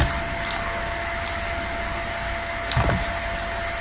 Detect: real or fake real